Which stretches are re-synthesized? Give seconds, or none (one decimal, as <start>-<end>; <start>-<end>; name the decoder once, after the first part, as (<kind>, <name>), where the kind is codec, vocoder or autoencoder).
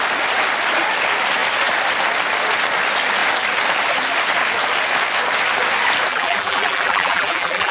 6.1-7.7 (vocoder, BigVGAN v2)